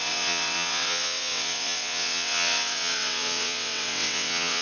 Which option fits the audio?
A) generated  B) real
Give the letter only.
A